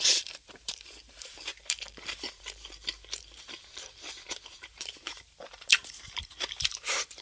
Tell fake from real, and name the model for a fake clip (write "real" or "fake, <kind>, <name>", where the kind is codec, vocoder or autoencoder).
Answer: fake, vocoder, BigVGAN v2